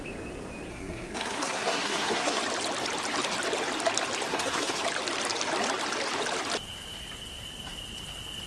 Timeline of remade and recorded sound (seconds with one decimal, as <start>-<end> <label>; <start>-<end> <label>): 0.0-0.7 recorded; 0.7-2.4 remade; 2.4-4.3 recorded; 4.3-4.8 remade; 4.8-8.5 recorded